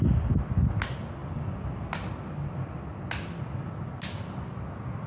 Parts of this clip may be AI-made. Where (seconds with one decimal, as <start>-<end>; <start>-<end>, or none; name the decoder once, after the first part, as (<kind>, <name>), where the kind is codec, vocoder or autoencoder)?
none